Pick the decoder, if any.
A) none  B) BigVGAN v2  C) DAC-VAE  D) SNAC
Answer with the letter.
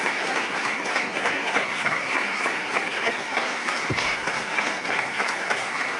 D